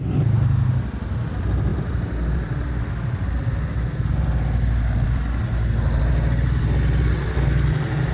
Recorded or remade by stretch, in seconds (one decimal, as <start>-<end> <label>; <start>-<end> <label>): 0.0-8.1 recorded